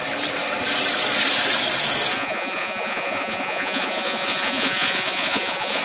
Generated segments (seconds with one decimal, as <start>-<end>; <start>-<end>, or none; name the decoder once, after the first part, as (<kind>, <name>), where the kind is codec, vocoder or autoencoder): 2.1-5.8 (vocoder, Vocos)